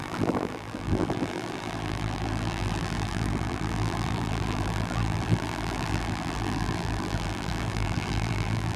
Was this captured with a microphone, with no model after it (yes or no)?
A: no